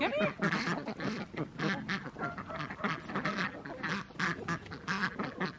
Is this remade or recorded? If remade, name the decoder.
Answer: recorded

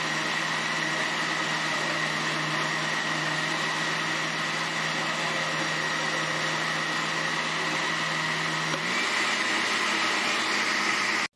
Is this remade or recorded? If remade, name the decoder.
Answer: recorded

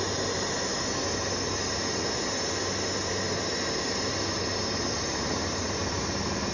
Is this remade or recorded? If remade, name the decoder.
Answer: recorded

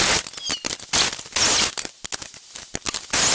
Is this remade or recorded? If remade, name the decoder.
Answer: recorded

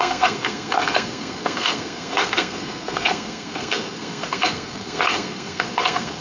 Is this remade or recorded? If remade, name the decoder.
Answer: remade, codec, SNAC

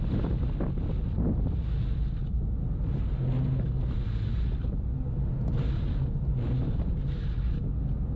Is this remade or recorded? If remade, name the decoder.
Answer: recorded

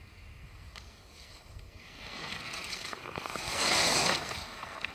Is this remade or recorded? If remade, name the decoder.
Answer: remade, codec, SNAC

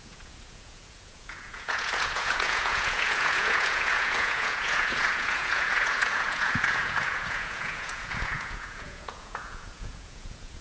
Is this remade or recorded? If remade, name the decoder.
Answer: remade, vocoder, Vocos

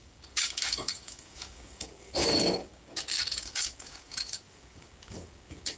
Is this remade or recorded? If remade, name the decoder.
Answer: remade, codec, DAC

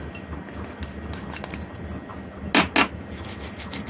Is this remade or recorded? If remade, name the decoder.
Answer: recorded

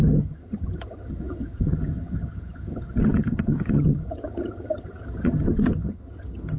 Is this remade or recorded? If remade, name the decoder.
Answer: remade, vocoder, HiFi-GAN